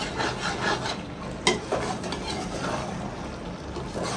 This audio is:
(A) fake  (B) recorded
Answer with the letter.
B